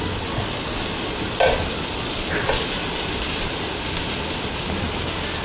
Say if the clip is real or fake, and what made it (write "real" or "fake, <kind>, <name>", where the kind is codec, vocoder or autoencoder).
real